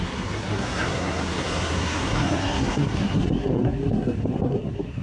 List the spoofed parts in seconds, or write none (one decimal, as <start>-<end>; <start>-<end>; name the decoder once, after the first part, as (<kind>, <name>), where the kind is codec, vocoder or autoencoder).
0.0-5.0 (codec, SNAC)